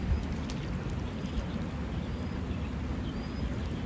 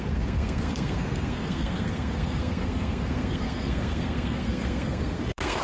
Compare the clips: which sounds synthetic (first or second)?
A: second